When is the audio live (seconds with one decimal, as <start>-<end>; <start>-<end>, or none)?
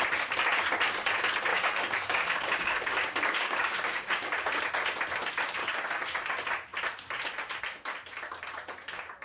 0.0-1.5; 4.6-5.6; 6.2-9.2